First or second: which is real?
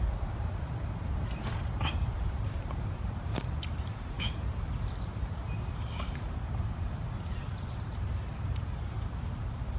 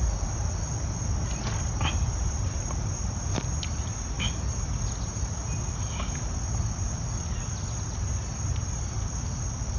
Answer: second